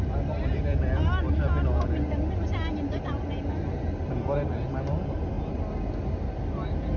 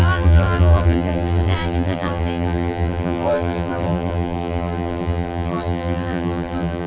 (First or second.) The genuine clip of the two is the first